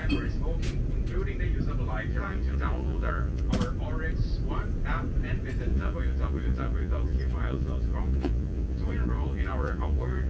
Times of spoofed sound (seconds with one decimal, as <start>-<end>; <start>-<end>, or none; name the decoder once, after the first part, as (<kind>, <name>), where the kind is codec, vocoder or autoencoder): 2.1-3.5 (vocoder, Vocos); 5.7-10.3